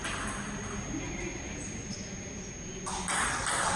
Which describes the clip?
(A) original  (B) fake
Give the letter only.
A